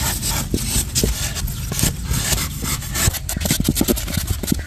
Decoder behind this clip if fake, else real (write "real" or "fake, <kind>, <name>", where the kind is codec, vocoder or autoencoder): real